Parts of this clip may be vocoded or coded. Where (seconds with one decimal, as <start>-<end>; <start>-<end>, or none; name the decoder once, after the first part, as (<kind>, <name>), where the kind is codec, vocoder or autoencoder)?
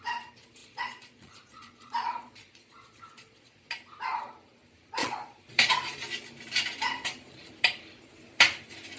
0.6-3.7 (vocoder, Vocos); 5.0-5.7